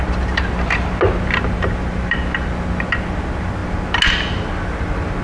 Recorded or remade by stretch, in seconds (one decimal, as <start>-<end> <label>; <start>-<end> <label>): 0.0-5.2 recorded